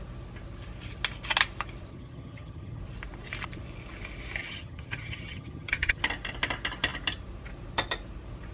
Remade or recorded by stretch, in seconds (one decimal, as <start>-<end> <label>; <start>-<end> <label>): 0.0-1.9 recorded; 1.9-2.8 remade; 2.8-4.4 recorded; 4.4-6.0 remade; 6.0-8.5 recorded